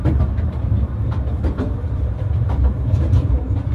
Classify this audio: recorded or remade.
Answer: remade